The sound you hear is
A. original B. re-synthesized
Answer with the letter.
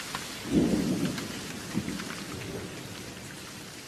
A